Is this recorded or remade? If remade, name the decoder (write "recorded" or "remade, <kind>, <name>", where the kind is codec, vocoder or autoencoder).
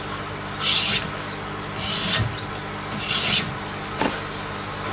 recorded